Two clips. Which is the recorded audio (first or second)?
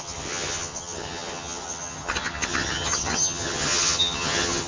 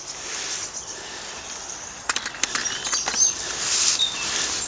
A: second